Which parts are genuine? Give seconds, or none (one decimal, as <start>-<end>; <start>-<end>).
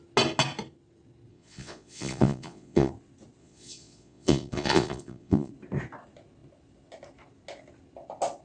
0.0-1.3; 2.9-3.4; 5.5-8.4